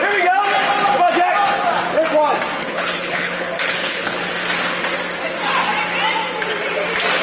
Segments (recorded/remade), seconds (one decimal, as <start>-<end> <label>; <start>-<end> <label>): 0.0-2.6 recorded; 2.6-4.3 remade; 4.3-7.2 recorded